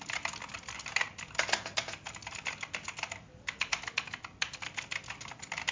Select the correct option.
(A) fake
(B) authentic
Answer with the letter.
B